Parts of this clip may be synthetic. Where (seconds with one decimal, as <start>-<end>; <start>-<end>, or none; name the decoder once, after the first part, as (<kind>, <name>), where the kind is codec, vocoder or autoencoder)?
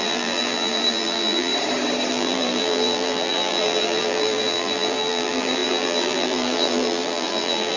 0.0-1.5 (vocoder, BigVGAN v2); 2.1-7.8